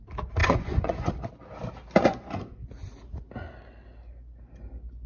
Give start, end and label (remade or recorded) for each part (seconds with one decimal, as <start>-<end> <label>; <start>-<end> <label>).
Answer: 0.0-0.4 recorded; 0.4-1.3 remade; 1.3-2.1 recorded; 2.1-2.7 remade; 2.7-5.1 recorded